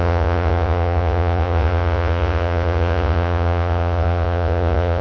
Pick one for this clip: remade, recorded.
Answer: remade